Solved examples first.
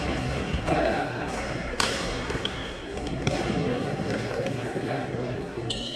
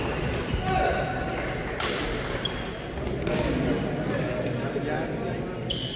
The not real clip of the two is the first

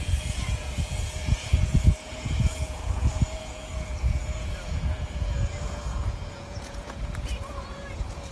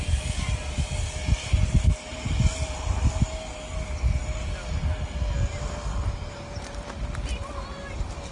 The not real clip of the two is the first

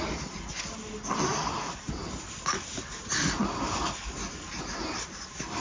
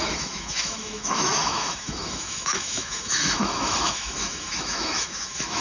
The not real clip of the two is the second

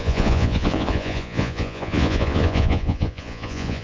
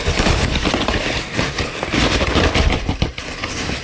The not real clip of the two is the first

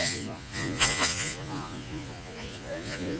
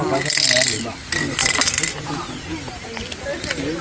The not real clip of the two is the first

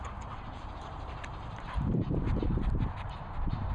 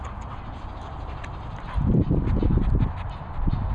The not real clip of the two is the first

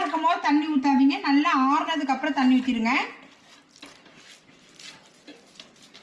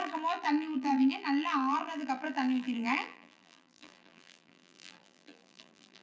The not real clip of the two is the second